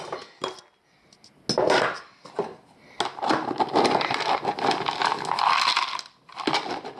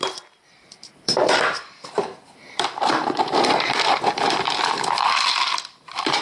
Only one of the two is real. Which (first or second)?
first